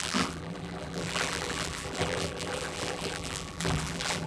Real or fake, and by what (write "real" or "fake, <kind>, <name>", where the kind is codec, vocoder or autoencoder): fake, vocoder, BigVGAN v2